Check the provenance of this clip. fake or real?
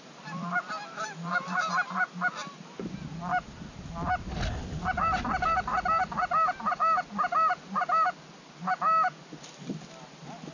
real